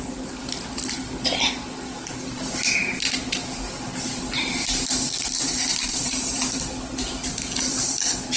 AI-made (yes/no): yes